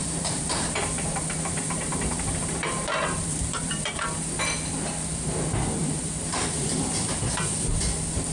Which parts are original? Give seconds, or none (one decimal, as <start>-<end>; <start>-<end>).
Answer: 4.2-5.8; 6.4-8.3